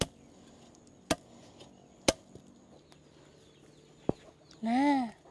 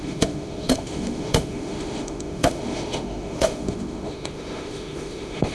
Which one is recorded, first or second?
first